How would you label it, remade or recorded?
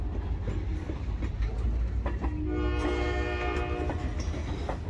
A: recorded